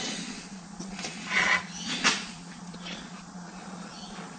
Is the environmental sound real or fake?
fake